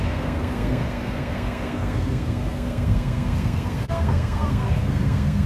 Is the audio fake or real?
fake